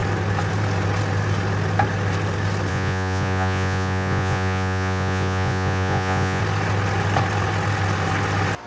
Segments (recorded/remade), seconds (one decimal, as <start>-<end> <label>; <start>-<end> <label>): 0.0-2.7 recorded; 2.7-6.4 remade; 6.4-8.7 recorded